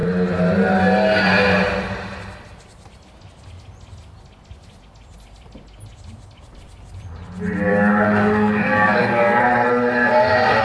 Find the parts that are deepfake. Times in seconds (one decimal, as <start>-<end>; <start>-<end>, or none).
7.7-9.4